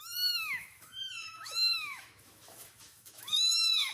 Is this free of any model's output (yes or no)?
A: no